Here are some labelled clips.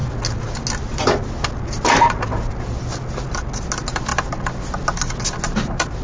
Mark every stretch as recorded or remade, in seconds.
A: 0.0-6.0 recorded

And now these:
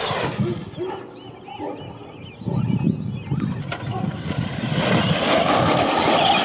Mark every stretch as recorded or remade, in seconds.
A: 0.0-6.4 recorded